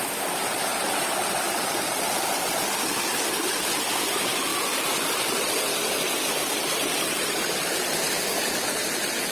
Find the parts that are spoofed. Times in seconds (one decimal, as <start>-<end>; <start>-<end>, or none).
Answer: 0.7-2.5; 4.5-7.7